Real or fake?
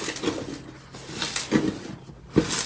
real